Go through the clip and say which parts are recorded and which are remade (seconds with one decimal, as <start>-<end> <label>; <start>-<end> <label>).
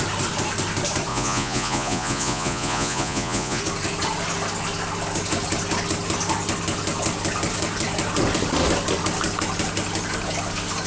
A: 0.0-1.1 recorded; 1.1-3.6 remade; 3.6-10.9 recorded